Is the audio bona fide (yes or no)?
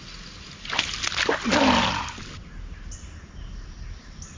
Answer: yes